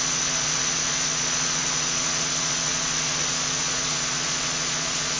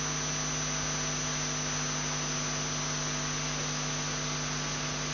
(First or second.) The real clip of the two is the second